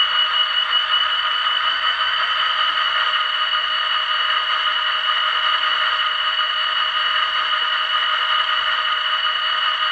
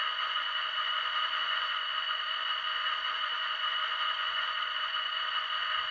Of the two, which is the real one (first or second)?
first